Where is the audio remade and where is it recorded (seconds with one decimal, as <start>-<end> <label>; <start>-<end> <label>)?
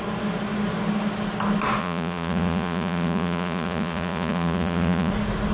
0.0-1.8 recorded; 1.8-5.1 remade; 5.1-5.5 recorded